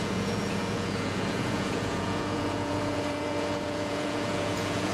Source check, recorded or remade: remade